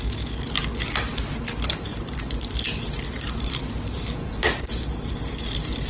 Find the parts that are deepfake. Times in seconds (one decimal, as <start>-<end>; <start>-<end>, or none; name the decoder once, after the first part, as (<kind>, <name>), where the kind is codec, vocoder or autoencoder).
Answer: 3.1-5.1 (vocoder, BigVGAN v2)